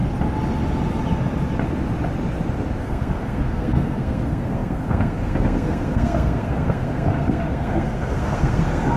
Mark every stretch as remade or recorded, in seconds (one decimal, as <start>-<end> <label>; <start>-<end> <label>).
0.0-2.8 recorded; 2.8-9.0 remade

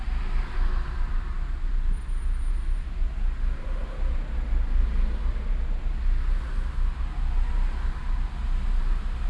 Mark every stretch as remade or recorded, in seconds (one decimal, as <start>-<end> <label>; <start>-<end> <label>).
0.0-9.3 recorded

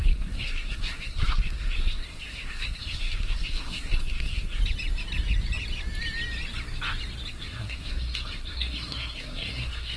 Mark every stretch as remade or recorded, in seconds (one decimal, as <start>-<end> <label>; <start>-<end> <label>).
0.0-4.6 remade; 4.6-7.3 recorded; 7.3-10.0 remade

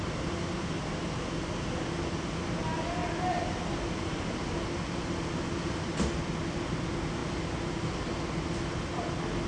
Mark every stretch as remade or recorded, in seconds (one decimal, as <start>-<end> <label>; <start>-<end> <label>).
0.0-9.5 recorded

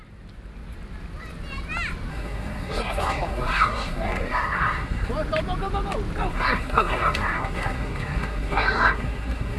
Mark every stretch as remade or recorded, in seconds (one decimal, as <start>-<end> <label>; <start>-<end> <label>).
0.0-2.1 recorded; 2.1-5.1 remade; 5.1-6.3 recorded; 6.3-9.6 remade

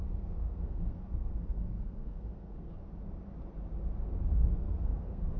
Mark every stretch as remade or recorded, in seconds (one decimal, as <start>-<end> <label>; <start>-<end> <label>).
0.0-2.7 remade; 2.7-4.5 recorded; 4.5-5.4 remade

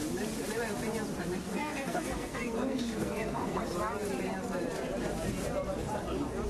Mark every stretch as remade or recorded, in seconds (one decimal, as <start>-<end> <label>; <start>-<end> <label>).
0.0-1.5 recorded; 1.5-3.6 remade; 3.6-6.5 recorded

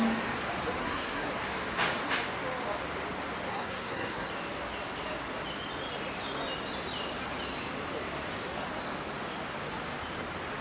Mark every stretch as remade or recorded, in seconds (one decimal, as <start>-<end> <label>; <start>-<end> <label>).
0.0-0.8 recorded; 0.8-1.3 remade; 1.3-3.5 recorded; 3.5-4.3 remade; 4.3-10.6 recorded